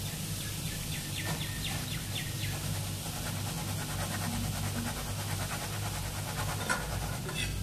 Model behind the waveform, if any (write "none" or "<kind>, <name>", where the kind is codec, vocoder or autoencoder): none